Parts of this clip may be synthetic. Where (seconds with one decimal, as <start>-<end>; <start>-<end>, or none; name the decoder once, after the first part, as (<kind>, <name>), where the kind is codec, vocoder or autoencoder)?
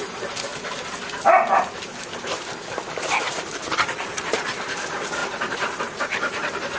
0.0-0.5 (vocoder, BigVGAN v2); 2.9-6.8